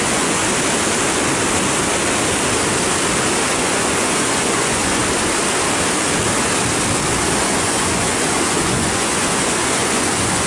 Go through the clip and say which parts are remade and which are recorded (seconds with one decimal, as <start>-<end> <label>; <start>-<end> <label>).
0.0-0.4 remade; 0.4-3.5 recorded; 3.5-5.0 remade; 5.0-7.4 recorded; 7.4-10.5 remade

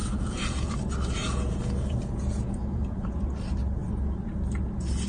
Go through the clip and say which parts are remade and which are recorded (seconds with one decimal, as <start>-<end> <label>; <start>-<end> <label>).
0.0-0.7 remade; 0.7-1.2 recorded; 1.2-3.2 remade; 3.2-5.1 recorded

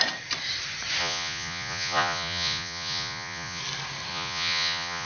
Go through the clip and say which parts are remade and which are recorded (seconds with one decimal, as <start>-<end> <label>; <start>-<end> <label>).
0.0-1.0 recorded; 1.0-3.6 remade; 3.6-4.1 recorded; 4.1-5.1 remade

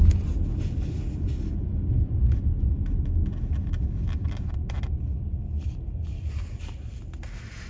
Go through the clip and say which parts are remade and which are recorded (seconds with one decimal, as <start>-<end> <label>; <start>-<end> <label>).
0.0-7.7 recorded

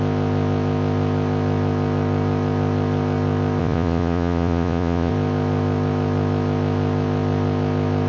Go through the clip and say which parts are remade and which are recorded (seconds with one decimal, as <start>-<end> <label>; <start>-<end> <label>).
0.0-3.6 recorded; 3.6-5.1 remade; 5.1-8.1 recorded